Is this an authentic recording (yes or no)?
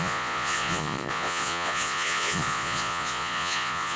no